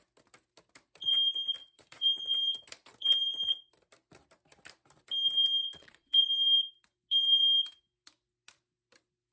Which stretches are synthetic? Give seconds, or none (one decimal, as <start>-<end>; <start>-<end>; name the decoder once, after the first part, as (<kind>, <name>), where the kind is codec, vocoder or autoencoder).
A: 1.6-2.3 (vocoder, Vocos); 5.6-6.3

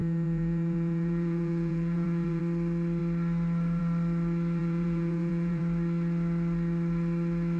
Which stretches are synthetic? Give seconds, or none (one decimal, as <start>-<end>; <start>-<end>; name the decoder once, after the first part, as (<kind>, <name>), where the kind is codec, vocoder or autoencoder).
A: 0.0-2.4 (vocoder, Vocos); 4.6-5.6

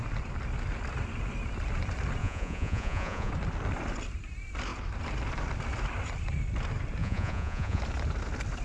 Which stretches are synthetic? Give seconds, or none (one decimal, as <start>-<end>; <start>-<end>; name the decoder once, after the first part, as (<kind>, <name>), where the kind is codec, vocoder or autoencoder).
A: 2.2-3.3 (vocoder, Vocos); 7.0-7.8

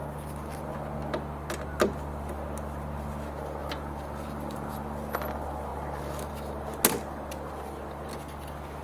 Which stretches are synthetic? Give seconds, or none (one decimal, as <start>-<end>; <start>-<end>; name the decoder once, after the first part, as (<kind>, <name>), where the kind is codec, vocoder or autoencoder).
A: none

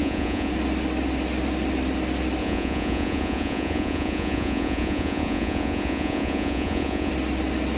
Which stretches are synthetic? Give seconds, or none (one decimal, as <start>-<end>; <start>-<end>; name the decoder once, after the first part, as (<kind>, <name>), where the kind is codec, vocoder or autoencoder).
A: 0.0-0.5 (vocoder, Vocos); 2.4-7.1